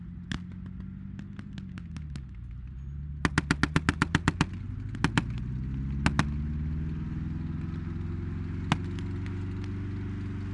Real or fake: real